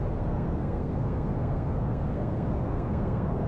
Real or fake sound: fake